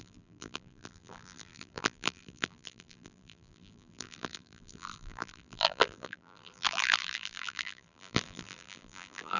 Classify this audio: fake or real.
fake